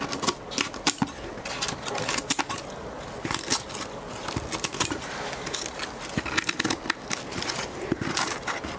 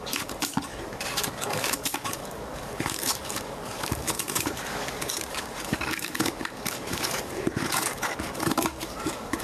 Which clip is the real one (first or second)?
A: first